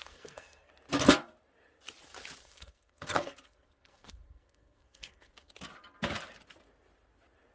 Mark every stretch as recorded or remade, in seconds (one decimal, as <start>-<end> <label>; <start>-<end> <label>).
0.0-0.7 remade; 0.7-2.4 recorded; 2.4-5.5 remade; 5.5-7.5 recorded